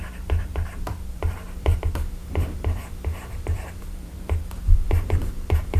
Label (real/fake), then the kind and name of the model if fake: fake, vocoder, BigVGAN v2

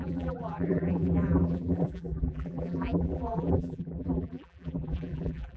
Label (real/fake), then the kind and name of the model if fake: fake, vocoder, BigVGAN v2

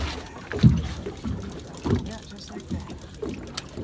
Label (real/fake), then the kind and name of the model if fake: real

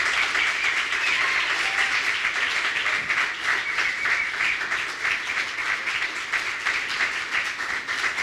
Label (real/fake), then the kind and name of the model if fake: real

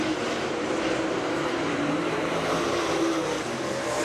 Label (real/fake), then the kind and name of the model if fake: fake, vocoder, BigVGAN v2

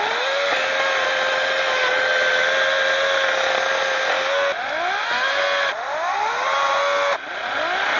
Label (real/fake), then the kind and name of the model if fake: real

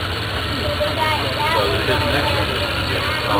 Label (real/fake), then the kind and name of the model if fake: real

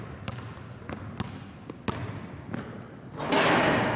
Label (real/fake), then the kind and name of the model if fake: real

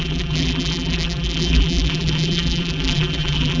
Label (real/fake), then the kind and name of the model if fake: fake, vocoder, BigVGAN v2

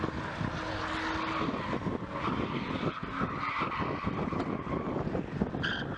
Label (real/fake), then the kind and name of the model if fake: real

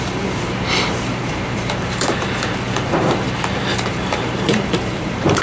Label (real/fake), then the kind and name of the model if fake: fake, vocoder, BigVGAN v2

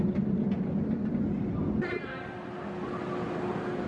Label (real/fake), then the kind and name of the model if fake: real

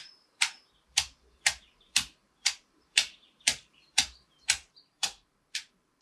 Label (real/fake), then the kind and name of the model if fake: fake, vocoder, BigVGAN v2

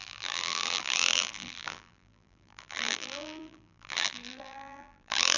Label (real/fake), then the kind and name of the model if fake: fake, vocoder, BigVGAN v2